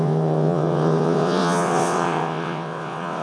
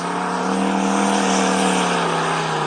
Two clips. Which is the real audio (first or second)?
second